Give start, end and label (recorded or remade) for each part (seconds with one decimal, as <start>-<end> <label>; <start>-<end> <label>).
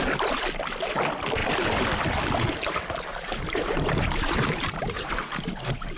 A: 0.0-3.1 recorded; 3.1-6.0 remade